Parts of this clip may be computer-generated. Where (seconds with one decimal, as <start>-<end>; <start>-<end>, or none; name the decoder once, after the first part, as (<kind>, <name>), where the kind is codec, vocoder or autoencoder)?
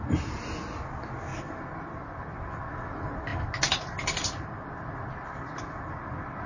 none